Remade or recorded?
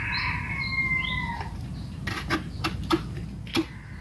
recorded